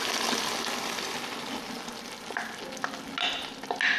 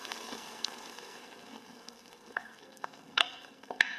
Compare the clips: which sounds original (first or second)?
first